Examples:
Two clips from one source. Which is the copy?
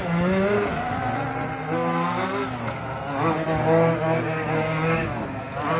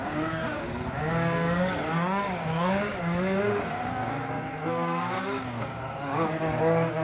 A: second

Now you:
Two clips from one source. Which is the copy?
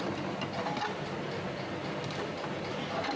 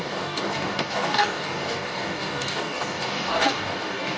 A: second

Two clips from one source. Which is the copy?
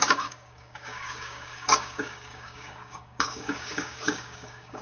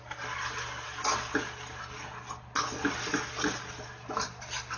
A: first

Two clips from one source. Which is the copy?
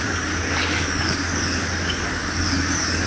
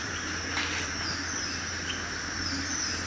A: first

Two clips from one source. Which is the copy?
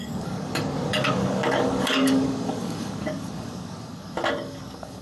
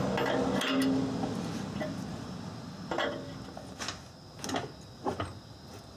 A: first